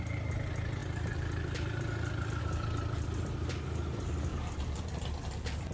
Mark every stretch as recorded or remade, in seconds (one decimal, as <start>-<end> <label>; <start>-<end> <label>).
0.0-4.3 recorded; 4.3-4.8 remade; 4.8-5.7 recorded